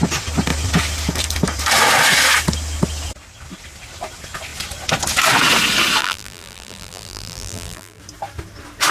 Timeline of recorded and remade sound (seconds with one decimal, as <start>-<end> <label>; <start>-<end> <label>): 0.0-6.0 recorded; 6.0-8.0 remade; 8.0-8.9 recorded

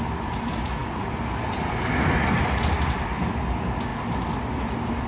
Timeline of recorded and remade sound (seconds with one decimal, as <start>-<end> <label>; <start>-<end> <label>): 0.0-5.1 recorded

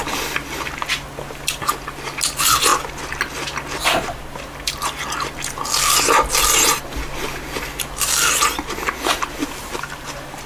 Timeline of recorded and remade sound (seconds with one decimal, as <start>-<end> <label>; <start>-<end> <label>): 0.0-9.6 recorded; 9.6-10.5 remade

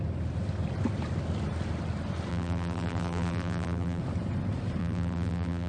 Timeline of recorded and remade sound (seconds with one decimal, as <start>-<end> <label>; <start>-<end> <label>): 0.0-2.3 recorded; 2.3-4.0 remade; 4.0-4.8 recorded; 4.8-5.7 remade

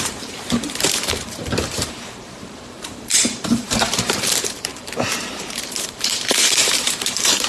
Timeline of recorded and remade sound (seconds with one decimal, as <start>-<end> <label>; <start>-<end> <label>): 0.0-7.5 remade

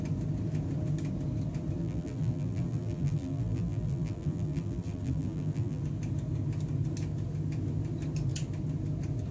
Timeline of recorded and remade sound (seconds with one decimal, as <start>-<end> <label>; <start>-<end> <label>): 0.0-1.8 recorded; 1.8-5.8 remade; 5.8-9.3 recorded